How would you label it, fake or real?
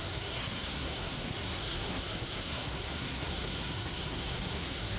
fake